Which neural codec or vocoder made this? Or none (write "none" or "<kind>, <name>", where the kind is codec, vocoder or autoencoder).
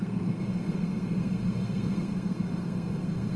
codec, SNAC